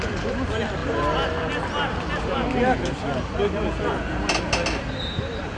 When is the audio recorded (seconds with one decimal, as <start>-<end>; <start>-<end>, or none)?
0.0-5.6